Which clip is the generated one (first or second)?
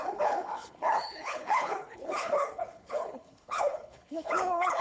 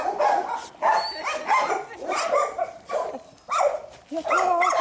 first